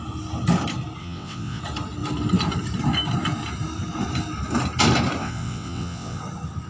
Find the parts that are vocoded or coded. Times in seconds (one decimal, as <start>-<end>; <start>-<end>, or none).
1.0-1.6; 5.2-6.2